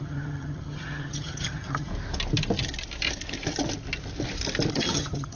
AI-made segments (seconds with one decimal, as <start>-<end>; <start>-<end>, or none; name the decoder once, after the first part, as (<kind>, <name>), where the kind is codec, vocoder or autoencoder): 0.0-1.9 (vocoder, HiFi-GAN); 4.7-5.4